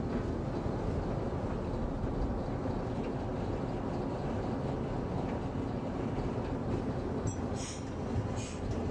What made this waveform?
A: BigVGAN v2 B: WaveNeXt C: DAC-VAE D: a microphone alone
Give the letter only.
D